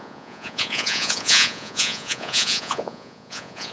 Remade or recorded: remade